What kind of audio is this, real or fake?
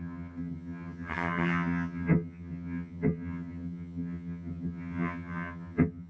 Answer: fake